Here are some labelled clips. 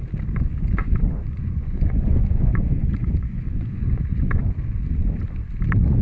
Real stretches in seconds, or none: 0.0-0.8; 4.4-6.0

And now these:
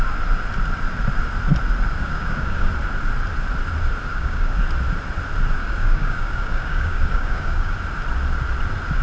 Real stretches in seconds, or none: 0.0-2.0; 2.7-4.1; 4.6-5.6; 7.7-9.0

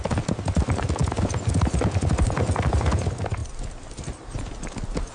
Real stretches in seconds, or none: 0.0-5.1

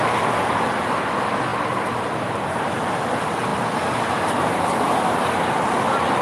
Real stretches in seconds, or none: 0.0-1.5; 2.7-3.5; 5.6-6.2

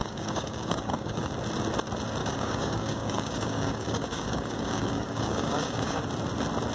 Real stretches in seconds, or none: 1.3-2.2; 6.0-6.7